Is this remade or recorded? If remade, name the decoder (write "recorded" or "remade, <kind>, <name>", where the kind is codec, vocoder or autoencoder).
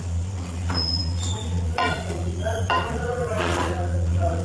remade, vocoder, Vocos